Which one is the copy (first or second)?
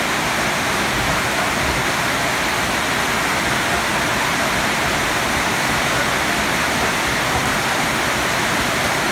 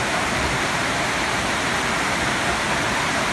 second